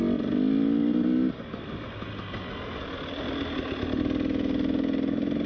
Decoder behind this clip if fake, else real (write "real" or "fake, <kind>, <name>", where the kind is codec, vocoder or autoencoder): real